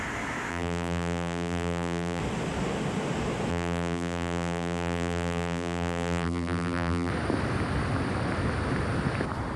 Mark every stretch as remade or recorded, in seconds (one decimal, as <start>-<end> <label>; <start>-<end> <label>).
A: 0.0-0.5 recorded; 0.5-2.2 remade; 2.2-3.5 recorded; 3.5-7.1 remade; 7.1-9.6 recorded